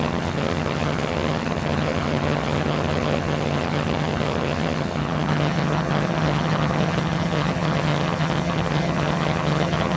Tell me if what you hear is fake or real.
fake